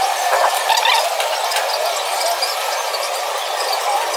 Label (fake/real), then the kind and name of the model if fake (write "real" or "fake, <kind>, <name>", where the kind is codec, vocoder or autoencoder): real